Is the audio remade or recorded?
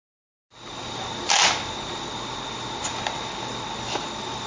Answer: recorded